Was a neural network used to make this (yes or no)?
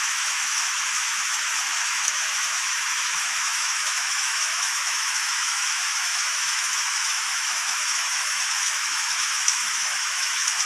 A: yes